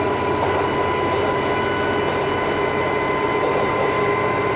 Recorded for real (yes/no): yes